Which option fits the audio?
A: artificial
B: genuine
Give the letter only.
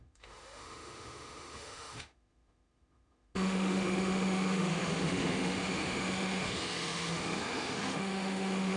A